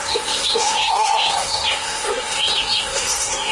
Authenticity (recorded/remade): remade